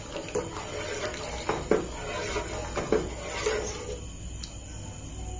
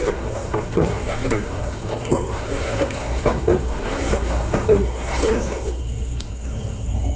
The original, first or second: first